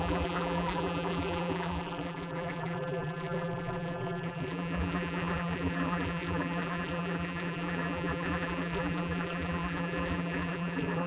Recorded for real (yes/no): no